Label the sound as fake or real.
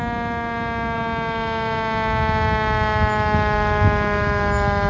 real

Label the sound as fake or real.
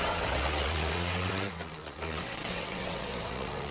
fake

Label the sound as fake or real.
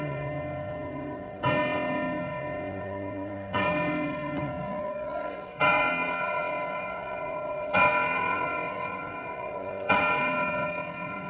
fake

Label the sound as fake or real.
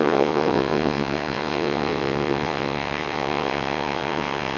fake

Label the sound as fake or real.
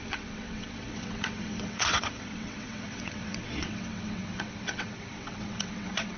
fake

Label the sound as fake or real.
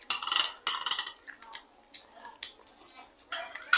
real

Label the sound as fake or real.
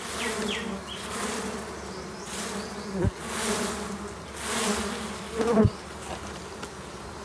real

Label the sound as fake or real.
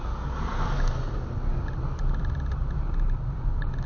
real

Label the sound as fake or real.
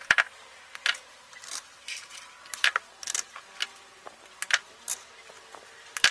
real